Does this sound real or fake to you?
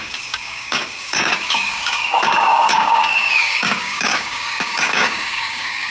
fake